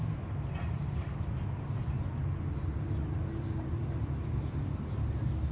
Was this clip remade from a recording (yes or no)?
no